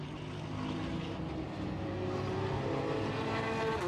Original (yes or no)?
yes